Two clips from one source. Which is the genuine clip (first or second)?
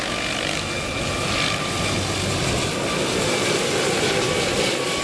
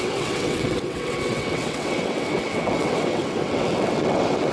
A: first